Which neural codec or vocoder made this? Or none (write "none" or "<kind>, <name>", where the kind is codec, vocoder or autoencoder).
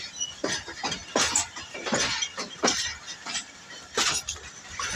vocoder, BigVGAN v2